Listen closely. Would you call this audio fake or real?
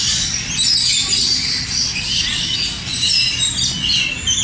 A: real